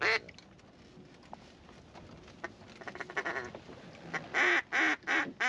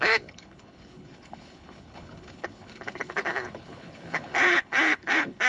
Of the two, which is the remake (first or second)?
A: second